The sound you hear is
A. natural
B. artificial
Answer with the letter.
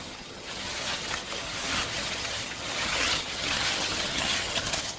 B